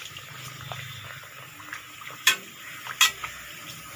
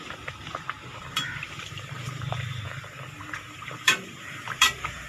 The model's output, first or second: second